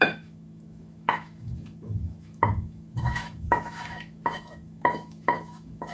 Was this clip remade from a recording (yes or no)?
yes